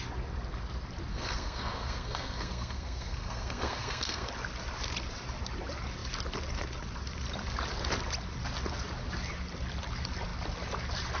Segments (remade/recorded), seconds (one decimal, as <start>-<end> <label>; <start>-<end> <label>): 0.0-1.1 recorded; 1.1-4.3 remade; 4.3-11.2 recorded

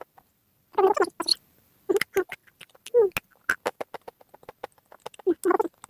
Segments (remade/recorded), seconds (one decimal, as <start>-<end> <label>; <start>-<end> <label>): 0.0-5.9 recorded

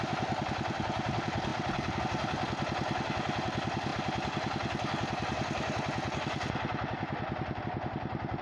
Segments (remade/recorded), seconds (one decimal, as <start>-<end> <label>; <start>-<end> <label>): 0.0-1.5 recorded; 1.5-2.0 remade; 2.0-8.4 recorded

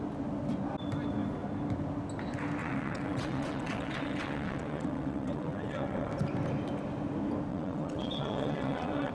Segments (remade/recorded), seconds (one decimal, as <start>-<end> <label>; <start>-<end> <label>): 0.0-2.6 recorded; 2.6-6.1 remade; 6.1-7.5 recorded; 7.5-9.1 remade

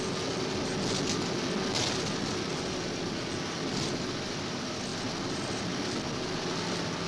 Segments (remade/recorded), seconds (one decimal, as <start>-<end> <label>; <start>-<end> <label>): 0.0-7.1 recorded

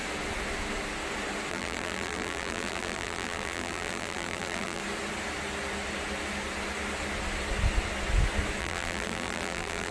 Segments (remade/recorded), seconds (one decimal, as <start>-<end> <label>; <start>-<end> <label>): 0.0-1.5 recorded; 1.5-4.8 remade; 4.8-8.6 recorded; 8.6-9.9 remade